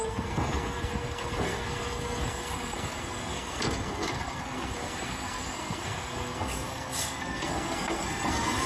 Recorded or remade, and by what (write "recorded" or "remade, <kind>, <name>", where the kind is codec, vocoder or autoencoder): remade, codec, SNAC